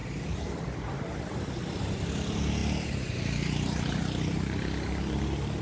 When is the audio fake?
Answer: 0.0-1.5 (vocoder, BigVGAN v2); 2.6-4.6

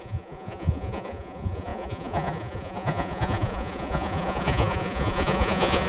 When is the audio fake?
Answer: 0.0-5.9 (vocoder, Vocos)